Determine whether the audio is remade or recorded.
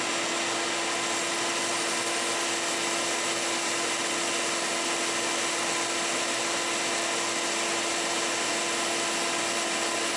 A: recorded